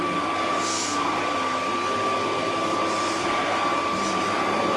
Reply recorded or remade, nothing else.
recorded